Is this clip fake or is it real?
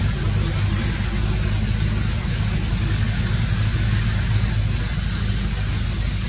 real